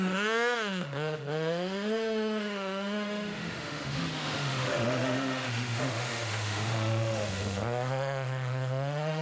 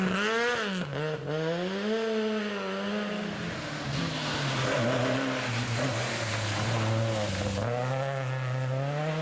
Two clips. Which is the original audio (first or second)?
second